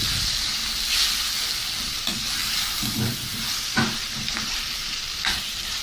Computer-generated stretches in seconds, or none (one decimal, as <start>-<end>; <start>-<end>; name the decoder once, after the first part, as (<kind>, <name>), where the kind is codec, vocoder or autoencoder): 2.4-5.8 (vocoder, BigVGAN v2)